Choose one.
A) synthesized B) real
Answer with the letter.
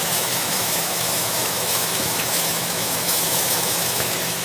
A